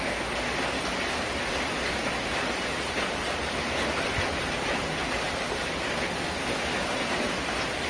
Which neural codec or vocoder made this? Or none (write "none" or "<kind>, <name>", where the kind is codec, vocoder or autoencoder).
none